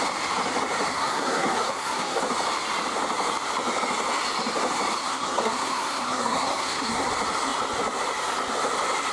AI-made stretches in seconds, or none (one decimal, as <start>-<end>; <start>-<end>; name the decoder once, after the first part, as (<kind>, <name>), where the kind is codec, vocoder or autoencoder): 0.9-2.2 (codec, SNAC); 5.0-7.1